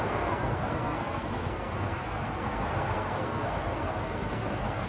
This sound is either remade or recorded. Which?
remade